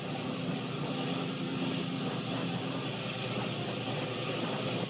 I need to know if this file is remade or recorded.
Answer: recorded